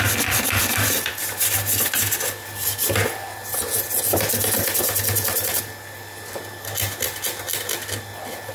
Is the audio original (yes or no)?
yes